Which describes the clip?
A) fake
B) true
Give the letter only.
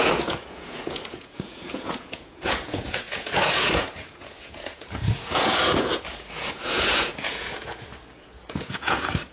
A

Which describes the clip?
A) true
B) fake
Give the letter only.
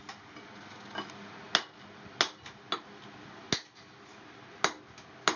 A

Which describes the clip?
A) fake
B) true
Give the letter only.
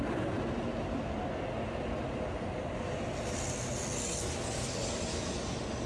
B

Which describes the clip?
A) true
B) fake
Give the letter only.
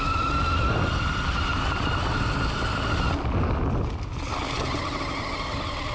A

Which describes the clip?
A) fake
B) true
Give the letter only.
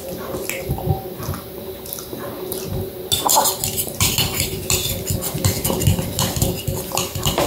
B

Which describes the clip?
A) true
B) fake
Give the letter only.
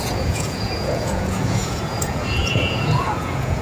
B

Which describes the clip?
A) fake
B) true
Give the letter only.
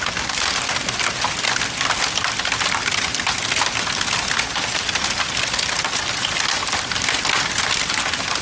B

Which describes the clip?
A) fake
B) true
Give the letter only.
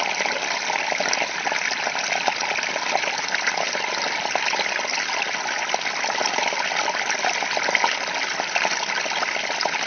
B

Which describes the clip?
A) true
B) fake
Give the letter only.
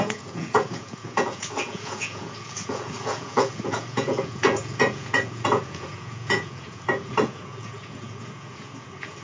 B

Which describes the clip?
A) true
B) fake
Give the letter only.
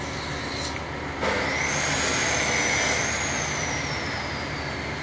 A